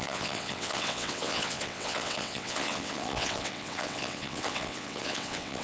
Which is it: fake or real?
fake